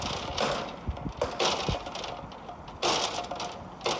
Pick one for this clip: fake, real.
real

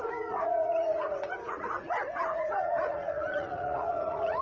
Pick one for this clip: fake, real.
fake